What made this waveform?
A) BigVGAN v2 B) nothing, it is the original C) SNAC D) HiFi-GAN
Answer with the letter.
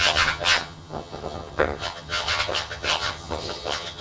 D